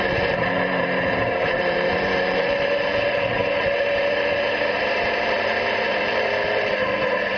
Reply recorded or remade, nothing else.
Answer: remade